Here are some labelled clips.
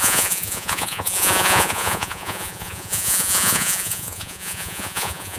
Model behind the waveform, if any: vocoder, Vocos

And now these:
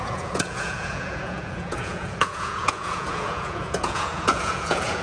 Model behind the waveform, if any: vocoder, Vocos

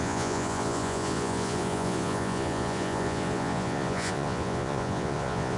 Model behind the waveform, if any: vocoder, Vocos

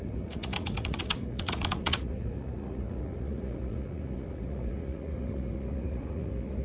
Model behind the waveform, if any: vocoder, Vocos